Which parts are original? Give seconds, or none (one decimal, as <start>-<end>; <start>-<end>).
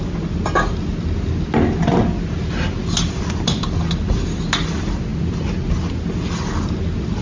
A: 0.0-7.2